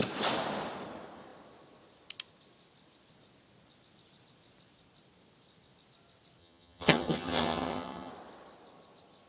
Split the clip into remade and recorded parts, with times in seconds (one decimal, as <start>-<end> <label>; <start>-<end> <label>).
0.0-6.4 recorded; 6.4-8.1 remade; 8.1-9.3 recorded